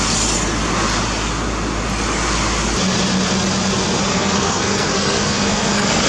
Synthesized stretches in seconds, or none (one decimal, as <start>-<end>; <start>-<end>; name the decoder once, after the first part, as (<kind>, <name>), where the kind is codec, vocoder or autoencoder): 4.1-6.1 (codec, SNAC)